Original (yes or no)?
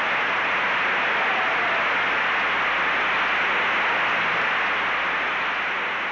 yes